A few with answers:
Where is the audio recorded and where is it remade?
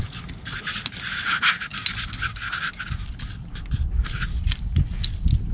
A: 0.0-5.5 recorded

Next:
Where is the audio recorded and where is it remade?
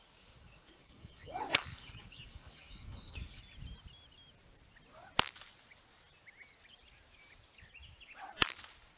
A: 0.0-3.4 remade; 3.4-9.0 recorded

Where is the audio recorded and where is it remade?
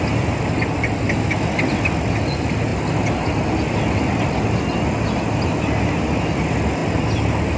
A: 0.0-7.6 recorded